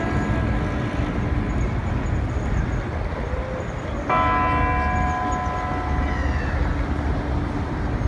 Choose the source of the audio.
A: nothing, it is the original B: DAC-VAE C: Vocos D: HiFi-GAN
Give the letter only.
A